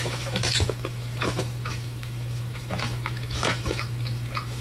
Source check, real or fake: fake